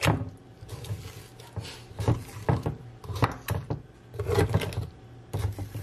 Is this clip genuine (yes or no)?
yes